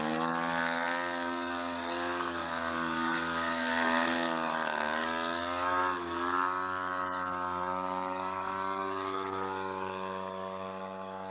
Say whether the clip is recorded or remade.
remade